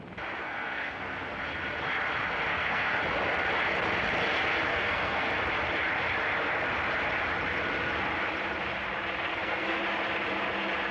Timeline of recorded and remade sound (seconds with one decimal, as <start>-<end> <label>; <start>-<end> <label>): 0.0-0.4 recorded; 0.4-1.4 remade; 1.4-2.5 recorded; 2.5-3.0 remade; 3.0-4.7 recorded; 4.7-5.3 remade; 5.3-9.3 recorded; 9.3-9.8 remade; 9.8-10.9 recorded